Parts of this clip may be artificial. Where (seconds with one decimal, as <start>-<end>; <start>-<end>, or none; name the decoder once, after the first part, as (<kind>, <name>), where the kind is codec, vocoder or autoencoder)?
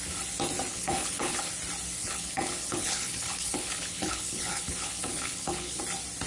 0.7-1.5 (codec, HILCodec); 2.0-5.8